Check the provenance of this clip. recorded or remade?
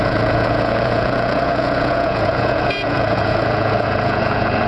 remade